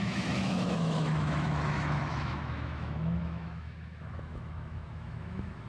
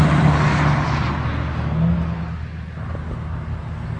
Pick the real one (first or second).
second